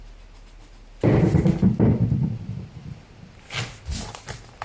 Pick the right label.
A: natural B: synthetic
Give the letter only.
A